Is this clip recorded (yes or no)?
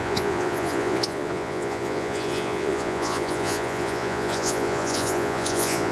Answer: no